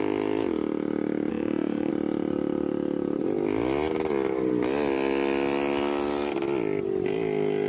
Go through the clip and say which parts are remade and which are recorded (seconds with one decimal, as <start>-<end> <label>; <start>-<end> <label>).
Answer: 0.0-1.3 recorded; 1.3-1.9 remade; 1.9-7.7 recorded